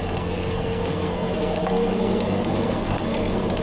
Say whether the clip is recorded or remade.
remade